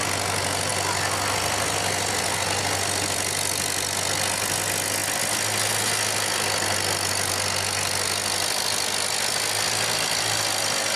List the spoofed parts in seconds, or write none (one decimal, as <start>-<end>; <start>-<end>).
none